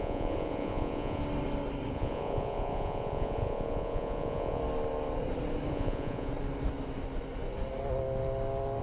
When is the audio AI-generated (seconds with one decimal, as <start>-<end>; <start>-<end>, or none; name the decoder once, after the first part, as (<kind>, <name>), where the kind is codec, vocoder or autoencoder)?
0.0-1.2 (vocoder, Vocos); 1.9-4.6; 5.7-6.3